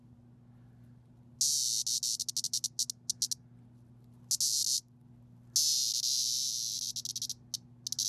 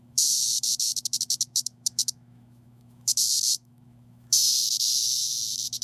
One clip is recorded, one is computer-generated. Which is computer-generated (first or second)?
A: second